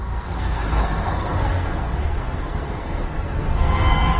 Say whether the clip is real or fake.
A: fake